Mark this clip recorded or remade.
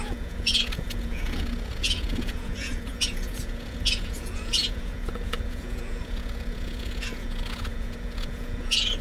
remade